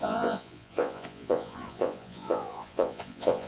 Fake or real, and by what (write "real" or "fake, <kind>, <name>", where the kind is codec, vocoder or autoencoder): fake, vocoder, Vocos